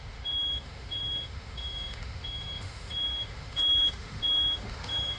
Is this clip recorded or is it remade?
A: remade